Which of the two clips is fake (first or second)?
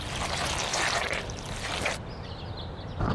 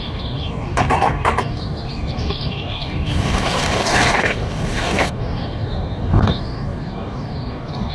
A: second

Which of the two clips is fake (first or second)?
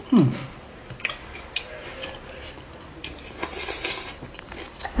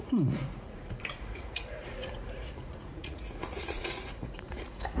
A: second